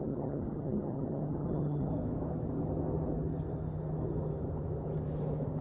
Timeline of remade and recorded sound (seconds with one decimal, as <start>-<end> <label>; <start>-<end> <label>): 0.0-1.9 remade; 1.9-5.6 recorded